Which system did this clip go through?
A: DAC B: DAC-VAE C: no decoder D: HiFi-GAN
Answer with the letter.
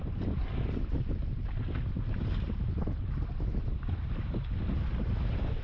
C